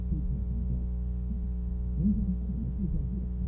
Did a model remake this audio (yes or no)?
no